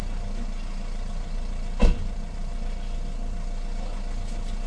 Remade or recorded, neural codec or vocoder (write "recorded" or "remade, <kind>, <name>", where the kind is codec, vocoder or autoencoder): recorded